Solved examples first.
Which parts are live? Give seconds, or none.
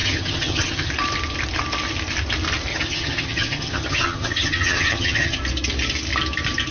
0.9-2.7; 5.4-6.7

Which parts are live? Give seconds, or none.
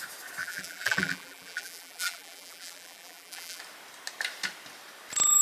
0.0-0.4; 3.6-5.4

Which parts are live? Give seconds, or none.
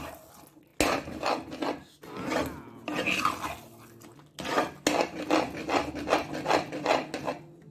0.0-7.7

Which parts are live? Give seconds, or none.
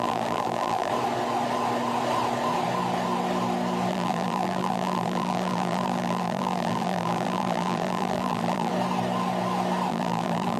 0.9-3.9; 8.7-9.9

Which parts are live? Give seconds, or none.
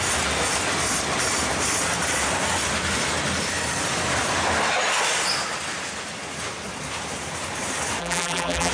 0.0-8.0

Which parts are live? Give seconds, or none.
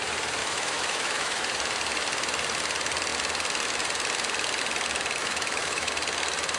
0.0-0.4; 1.4-5.2; 5.9-6.6